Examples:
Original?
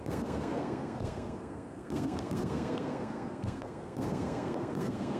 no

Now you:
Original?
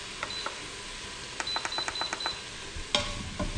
yes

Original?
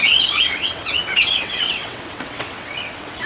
no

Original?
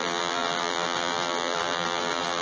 no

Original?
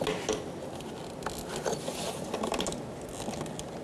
yes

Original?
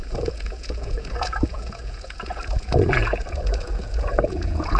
no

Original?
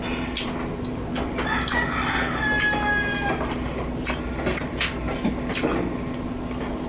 yes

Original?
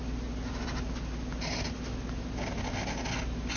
yes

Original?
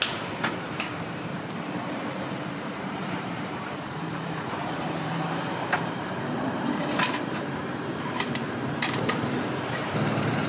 no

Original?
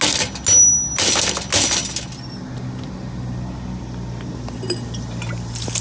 yes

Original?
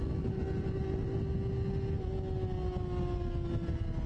yes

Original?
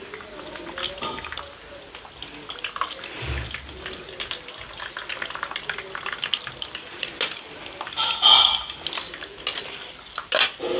yes